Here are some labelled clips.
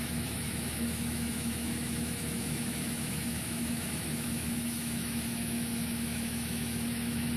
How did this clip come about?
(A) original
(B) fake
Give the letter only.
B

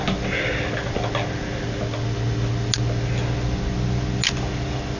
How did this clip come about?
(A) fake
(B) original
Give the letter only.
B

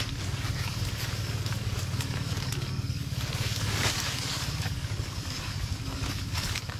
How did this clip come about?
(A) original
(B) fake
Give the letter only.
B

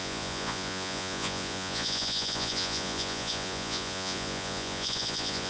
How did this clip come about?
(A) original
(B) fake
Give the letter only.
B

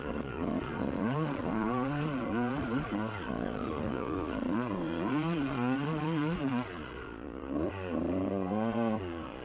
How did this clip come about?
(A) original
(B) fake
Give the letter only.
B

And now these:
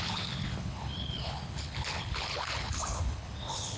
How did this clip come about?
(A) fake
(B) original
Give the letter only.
A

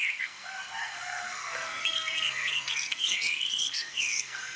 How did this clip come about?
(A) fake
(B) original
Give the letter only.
A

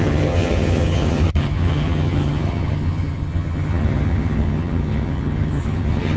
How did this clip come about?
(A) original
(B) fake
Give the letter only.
B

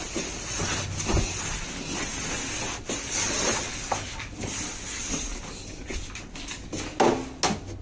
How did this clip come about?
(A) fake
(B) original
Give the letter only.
B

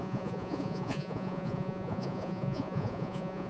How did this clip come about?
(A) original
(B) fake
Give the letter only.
B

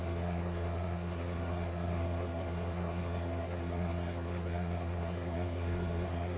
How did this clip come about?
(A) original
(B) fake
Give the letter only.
B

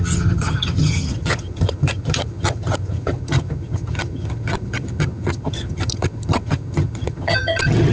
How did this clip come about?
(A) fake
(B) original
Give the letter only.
A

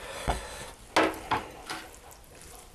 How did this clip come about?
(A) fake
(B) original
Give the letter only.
B